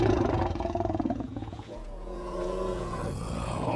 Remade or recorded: remade